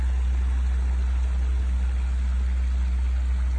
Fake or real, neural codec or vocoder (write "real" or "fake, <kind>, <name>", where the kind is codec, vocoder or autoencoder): real